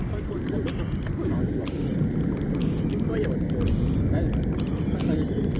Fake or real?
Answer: real